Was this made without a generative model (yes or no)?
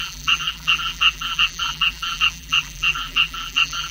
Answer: no